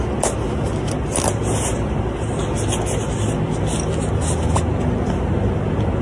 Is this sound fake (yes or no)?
no